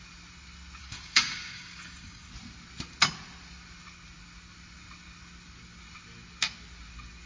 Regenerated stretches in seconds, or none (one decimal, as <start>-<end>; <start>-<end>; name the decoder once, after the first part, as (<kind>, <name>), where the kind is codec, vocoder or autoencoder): 0.8-2.3 (codec, DAC)